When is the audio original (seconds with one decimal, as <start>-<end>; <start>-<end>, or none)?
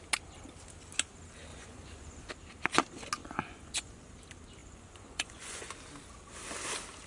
0.0-1.5; 2.3-3.2; 4.1-4.6; 5.7-7.1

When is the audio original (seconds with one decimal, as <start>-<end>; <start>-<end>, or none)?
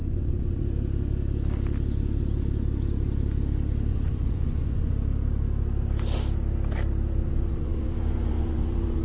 0.6-3.9; 4.9-7.2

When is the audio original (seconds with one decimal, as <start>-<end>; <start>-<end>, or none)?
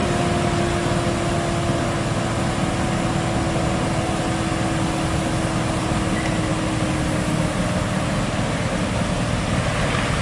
0.0-10.2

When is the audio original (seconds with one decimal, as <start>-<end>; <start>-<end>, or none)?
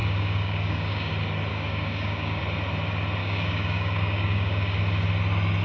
1.1-1.5; 2.4-3.2; 4.8-5.6